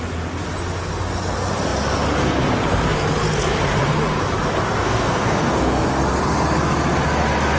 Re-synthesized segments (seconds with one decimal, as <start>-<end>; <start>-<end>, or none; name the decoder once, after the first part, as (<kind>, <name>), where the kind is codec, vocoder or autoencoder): 4.8-6.0 (codec, SNAC)